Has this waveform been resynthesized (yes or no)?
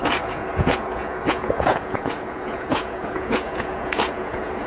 yes